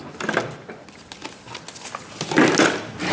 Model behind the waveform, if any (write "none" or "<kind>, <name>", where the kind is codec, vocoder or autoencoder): none